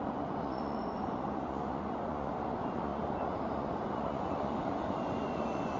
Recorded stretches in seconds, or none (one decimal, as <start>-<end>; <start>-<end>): none